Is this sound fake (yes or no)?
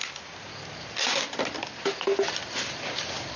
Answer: no